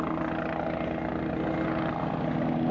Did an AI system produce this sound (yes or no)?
no